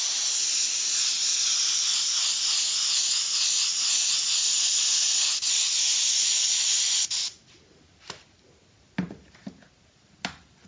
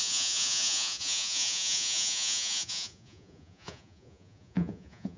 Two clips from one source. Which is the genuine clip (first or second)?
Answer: first